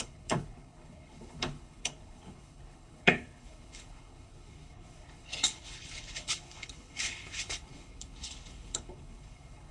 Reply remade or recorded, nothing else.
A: remade